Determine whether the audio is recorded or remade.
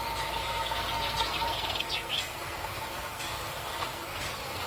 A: remade